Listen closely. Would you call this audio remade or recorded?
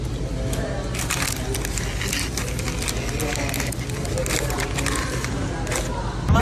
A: recorded